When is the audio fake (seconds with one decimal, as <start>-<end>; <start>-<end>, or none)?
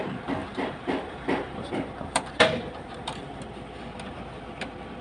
0.4-3.4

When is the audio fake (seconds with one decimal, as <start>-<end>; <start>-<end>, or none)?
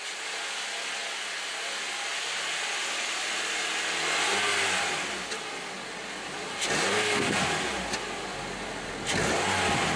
none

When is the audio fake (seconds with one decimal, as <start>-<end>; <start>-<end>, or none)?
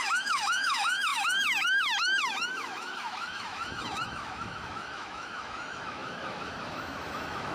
0.0-7.5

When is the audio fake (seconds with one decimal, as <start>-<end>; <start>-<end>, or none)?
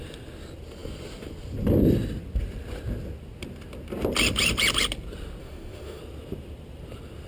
5.4-6.0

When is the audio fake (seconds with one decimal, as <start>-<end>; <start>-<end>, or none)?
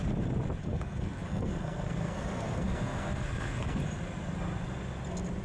0.6-3.8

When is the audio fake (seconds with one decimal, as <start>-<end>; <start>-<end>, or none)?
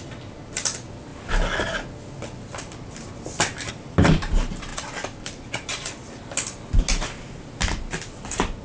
none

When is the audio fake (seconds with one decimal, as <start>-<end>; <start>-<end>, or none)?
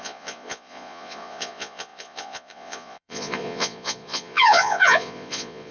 0.0-5.7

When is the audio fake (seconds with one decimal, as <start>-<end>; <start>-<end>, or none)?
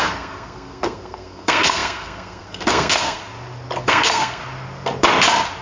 0.0-3.2; 3.8-4.4